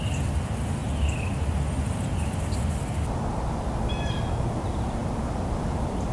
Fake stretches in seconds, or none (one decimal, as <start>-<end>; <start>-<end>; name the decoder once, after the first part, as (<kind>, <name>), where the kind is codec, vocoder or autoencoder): none

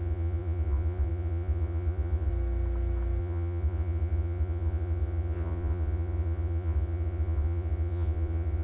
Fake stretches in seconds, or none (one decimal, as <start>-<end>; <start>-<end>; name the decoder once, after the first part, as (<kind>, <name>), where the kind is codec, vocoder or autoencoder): 0.0-2.3 (vocoder, Vocos); 3.2-8.6

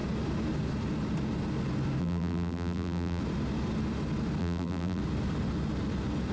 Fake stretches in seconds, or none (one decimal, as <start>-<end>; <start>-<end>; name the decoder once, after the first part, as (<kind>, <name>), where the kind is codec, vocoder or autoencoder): 2.0-3.2 (vocoder, BigVGAN v2); 4.4-5.0

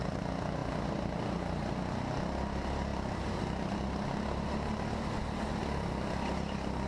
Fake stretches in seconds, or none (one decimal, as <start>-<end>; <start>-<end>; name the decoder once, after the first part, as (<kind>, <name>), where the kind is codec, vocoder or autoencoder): none

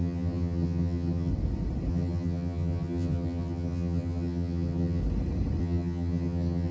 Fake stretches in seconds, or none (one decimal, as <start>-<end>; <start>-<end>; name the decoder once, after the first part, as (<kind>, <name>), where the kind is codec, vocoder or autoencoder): 0.0-1.3 (vocoder, HiFi-GAN); 1.9-5.0; 5.6-6.7

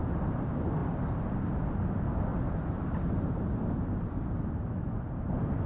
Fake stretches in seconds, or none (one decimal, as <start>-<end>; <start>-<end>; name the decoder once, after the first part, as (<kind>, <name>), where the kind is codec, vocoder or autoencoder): none

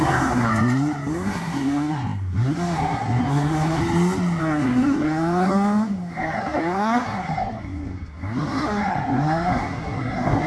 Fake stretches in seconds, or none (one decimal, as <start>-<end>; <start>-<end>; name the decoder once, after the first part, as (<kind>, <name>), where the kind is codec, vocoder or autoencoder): 0.0-0.5 (codec, SNAC); 1.1-3.8; 4.4-10.5